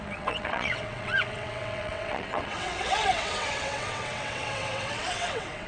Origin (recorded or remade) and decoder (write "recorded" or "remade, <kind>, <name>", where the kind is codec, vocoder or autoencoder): remade, vocoder, WaveNeXt